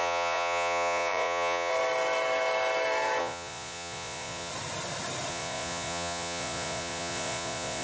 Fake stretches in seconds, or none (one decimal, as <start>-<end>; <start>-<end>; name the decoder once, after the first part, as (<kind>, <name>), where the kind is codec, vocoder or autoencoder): 0.0-1.7 (vocoder, Vocos); 3.2-4.5; 5.3-7.8